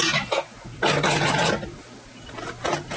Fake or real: real